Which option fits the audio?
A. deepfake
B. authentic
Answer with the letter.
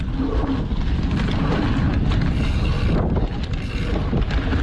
B